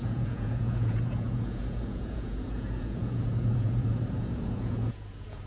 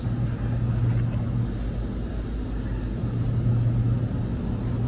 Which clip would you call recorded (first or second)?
second